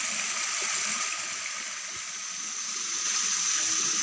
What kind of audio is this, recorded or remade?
recorded